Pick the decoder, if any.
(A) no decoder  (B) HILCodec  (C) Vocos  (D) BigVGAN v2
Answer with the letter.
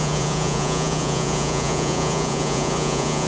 C